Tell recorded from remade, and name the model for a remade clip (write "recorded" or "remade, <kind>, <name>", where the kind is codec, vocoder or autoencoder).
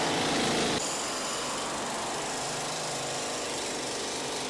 recorded